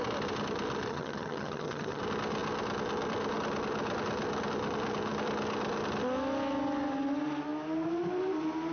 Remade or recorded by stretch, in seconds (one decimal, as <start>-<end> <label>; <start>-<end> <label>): 0.0-0.9 recorded; 0.9-2.0 remade; 2.0-8.7 recorded